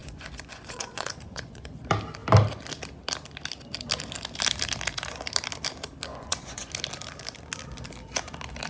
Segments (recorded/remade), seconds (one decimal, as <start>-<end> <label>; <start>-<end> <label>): 0.0-1.8 remade; 1.8-6.1 recorded; 6.1-6.7 remade; 6.7-8.7 recorded